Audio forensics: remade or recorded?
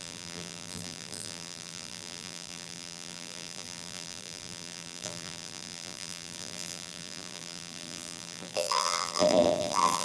remade